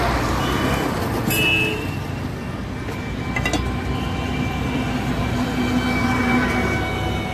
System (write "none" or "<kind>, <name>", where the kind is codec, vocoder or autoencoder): none